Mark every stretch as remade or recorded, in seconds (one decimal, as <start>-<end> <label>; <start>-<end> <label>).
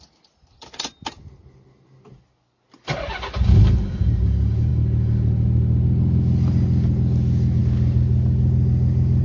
0.0-9.2 recorded